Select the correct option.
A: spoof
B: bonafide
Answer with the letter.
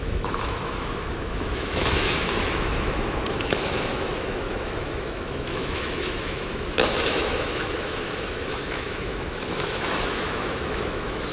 A